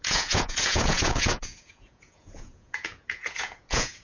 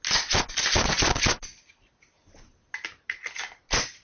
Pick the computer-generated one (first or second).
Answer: first